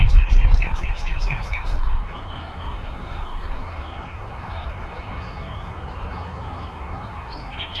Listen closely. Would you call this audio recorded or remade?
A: remade